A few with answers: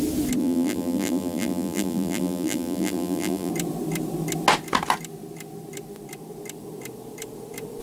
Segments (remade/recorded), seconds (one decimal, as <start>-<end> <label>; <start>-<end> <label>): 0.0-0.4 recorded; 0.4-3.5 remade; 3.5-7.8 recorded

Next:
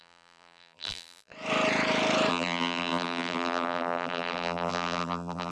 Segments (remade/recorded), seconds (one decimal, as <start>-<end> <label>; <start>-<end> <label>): 0.0-1.3 remade; 1.3-2.3 recorded; 2.3-5.5 remade

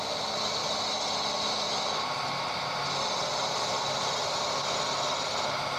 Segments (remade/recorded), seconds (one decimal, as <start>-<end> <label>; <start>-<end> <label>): 0.0-5.8 recorded

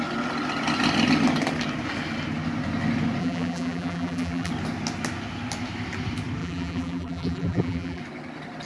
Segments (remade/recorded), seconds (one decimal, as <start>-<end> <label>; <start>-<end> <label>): 0.0-3.2 recorded; 3.2-4.5 remade; 4.5-6.4 recorded; 6.4-8.0 remade; 8.0-8.7 recorded

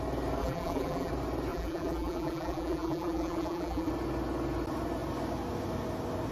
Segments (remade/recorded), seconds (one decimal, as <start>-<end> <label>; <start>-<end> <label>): 0.0-0.4 recorded; 0.4-1.1 remade; 1.1-1.5 recorded; 1.5-3.9 remade; 3.9-6.3 recorded

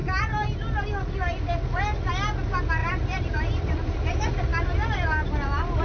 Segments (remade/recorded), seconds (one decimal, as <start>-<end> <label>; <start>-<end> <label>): 0.0-2.8 recorded; 2.8-4.1 remade; 4.1-5.8 recorded